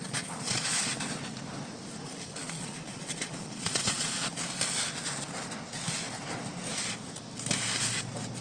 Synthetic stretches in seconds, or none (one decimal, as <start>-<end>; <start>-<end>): 0.0-0.8; 2.4-4.3